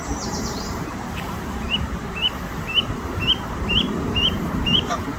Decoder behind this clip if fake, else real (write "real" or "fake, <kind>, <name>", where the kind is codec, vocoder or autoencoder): fake, vocoder, BigVGAN v2